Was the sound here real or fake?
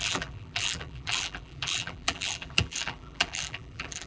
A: fake